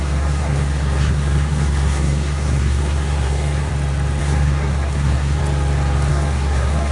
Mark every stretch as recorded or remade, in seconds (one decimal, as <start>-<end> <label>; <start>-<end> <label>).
0.0-3.7 remade; 3.7-4.2 recorded; 4.2-5.4 remade; 5.4-6.1 recorded; 6.1-6.9 remade